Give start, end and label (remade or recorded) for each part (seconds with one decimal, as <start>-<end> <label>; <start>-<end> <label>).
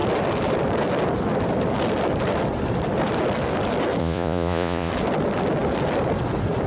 0.0-4.0 recorded; 4.0-4.9 remade; 4.9-6.7 recorded